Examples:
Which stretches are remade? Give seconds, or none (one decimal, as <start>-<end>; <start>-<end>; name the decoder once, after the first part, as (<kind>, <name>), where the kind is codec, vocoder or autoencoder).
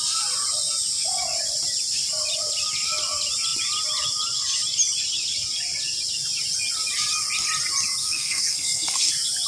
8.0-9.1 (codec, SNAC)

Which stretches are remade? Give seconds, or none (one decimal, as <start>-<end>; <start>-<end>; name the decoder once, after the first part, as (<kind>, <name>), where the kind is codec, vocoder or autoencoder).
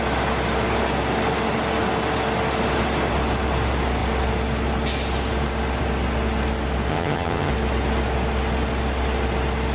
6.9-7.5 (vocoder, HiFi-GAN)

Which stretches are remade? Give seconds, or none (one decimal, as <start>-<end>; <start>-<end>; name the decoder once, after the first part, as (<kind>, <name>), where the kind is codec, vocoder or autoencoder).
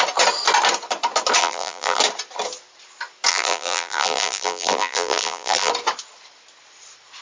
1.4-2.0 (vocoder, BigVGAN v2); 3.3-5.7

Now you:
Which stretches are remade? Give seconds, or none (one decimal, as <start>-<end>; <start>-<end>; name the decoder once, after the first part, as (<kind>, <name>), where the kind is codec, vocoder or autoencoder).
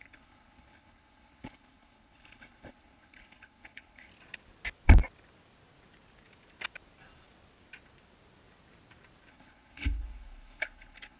0.0-4.1 (codec, HILCodec); 9.3-11.2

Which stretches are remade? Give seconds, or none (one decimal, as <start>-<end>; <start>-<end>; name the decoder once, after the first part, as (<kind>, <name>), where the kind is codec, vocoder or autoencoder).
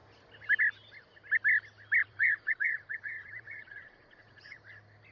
2.0-4.6 (vocoder, Vocos)